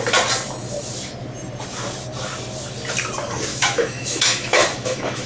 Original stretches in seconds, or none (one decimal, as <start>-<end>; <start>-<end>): 0.0-3.5